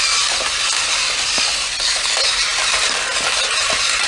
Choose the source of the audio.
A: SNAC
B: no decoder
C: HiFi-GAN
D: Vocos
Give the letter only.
B